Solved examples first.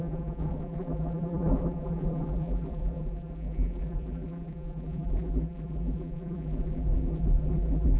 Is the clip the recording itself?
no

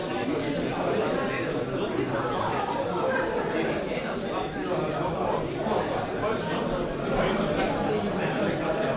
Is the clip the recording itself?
yes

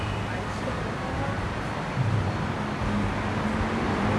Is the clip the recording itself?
yes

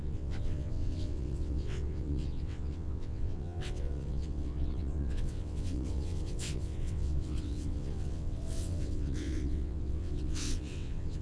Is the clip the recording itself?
no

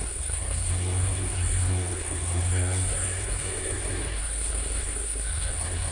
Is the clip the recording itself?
no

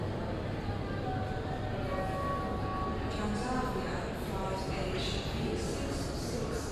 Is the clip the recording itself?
yes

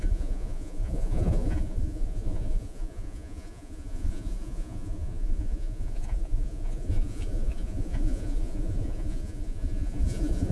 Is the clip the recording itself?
no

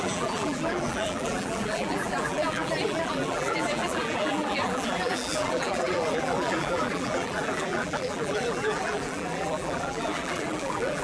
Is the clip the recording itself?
no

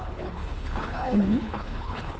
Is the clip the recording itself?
no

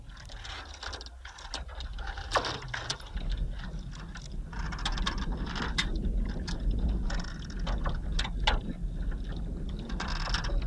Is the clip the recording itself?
yes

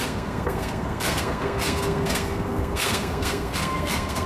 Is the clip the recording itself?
no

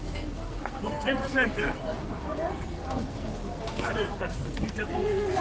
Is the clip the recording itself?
no